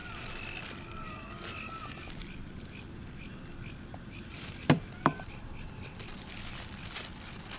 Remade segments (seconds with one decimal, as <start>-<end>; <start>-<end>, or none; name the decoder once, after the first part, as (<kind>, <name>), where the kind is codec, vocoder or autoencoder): 4.3-6.1 (vocoder, BigVGAN v2)